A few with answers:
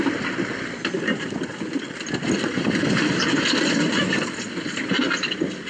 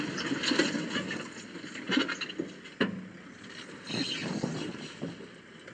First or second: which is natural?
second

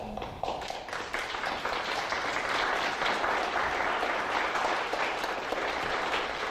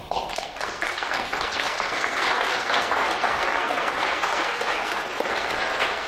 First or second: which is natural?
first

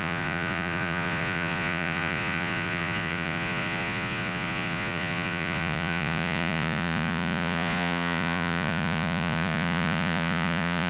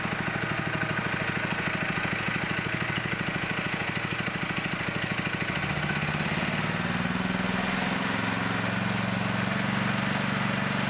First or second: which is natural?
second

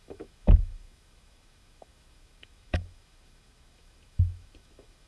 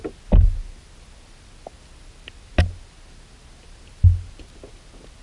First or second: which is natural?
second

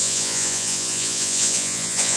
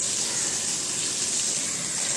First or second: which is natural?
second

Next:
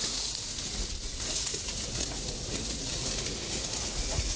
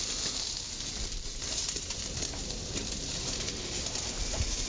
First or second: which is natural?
second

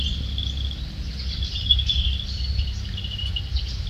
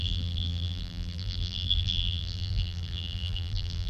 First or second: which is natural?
first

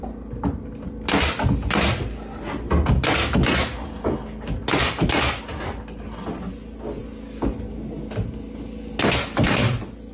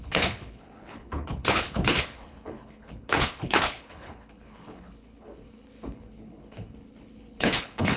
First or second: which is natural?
first